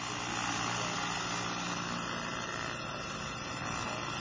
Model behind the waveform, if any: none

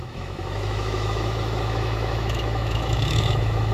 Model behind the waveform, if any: autoencoder, DAC-VAE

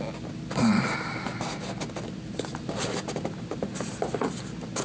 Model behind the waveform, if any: none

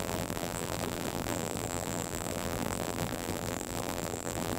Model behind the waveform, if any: vocoder, BigVGAN v2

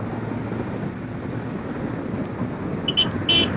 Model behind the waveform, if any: none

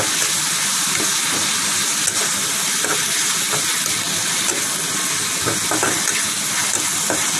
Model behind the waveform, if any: none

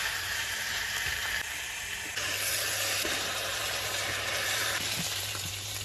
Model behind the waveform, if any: vocoder, BigVGAN v2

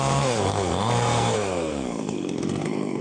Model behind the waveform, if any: codec, SNAC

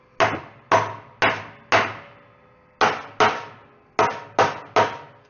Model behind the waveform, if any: none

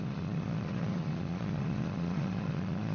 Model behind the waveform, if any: vocoder, Vocos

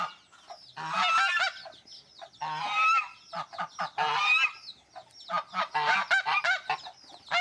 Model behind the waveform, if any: none